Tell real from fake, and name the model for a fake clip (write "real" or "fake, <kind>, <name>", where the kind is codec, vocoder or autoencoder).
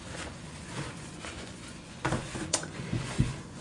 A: fake, vocoder, Vocos